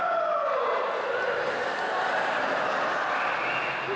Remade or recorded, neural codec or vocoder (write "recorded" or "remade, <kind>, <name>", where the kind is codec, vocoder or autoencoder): recorded